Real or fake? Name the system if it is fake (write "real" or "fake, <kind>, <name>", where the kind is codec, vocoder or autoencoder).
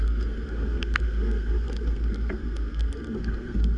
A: fake, codec, SNAC